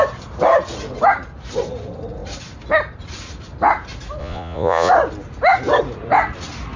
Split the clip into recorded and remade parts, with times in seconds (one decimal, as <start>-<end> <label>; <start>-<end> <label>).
0.0-4.2 recorded; 4.2-4.9 remade; 4.9-6.8 recorded